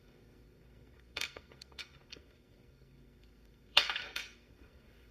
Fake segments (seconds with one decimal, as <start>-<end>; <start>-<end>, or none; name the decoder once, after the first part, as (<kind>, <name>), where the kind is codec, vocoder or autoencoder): 0.0-5.1 (codec, SNAC)